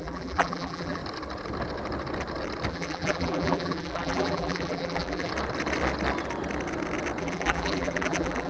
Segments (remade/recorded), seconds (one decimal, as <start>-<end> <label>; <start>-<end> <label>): 0.0-1.0 remade; 1.0-2.7 recorded; 2.7-5.3 remade; 5.3-7.2 recorded; 7.2-8.5 remade